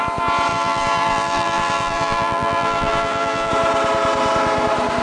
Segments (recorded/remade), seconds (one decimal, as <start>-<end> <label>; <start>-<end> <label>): 0.0-0.5 recorded; 0.5-3.5 remade; 3.5-5.0 recorded